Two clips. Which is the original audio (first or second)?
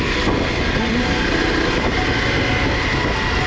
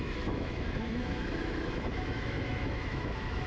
first